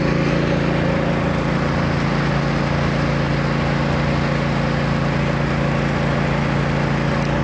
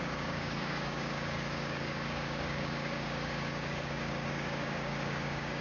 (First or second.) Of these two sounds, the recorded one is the first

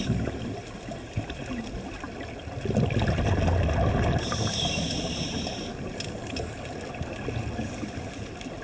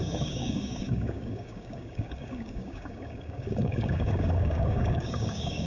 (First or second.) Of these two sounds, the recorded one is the first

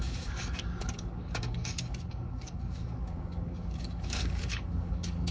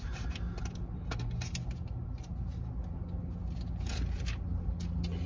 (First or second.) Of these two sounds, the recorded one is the second